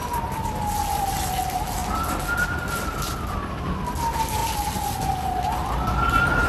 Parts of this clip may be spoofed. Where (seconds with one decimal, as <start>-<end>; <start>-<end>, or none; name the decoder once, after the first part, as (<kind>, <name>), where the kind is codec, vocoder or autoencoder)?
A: none